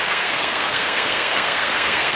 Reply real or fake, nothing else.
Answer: fake